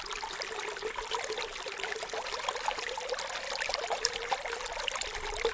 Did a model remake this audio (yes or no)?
no